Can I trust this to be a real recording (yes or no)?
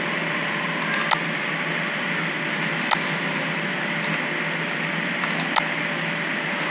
yes